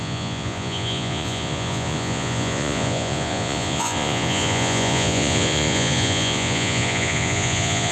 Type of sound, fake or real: fake